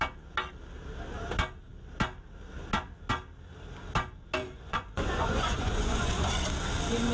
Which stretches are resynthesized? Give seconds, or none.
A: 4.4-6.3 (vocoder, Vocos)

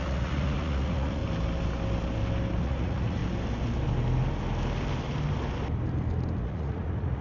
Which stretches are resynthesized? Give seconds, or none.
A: 0.0-1.2 (vocoder, Vocos); 2.6-3.2; 6.4-7.2

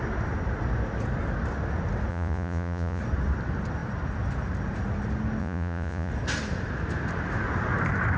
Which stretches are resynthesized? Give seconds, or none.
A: 2.1-3.0 (vocoder, Vocos); 5.4-6.1

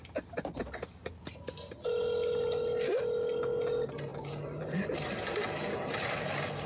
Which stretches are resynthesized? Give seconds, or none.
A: none

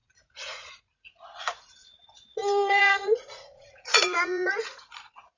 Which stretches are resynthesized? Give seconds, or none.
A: 0.0-5.4 (vocoder, Vocos)

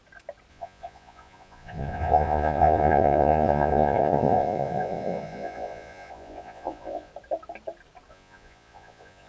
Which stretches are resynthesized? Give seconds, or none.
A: 0.5-7.1 (vocoder, Vocos); 8.1-9.3

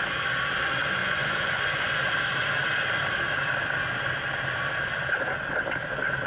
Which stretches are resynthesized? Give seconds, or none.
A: 1.0-1.9 (vocoder, Vocos)

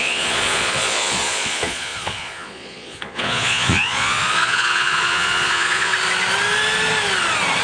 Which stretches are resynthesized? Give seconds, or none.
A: 0.0-5.9 (vocoder, Vocos)